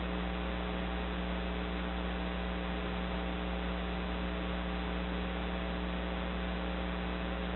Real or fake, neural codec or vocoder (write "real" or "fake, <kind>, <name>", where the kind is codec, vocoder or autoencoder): real